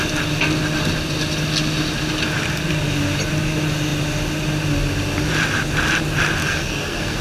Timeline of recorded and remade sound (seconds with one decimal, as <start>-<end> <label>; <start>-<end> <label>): 0.0-6.4 recorded; 6.4-7.2 remade